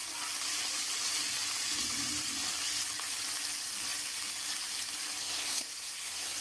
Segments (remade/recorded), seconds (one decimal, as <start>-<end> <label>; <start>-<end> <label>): 0.0-5.2 recorded; 5.2-6.4 remade